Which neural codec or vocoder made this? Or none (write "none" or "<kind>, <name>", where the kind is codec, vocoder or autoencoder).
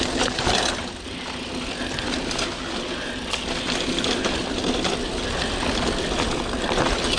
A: none